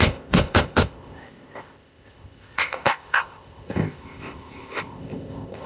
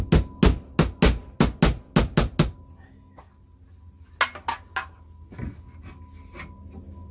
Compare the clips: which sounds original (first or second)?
second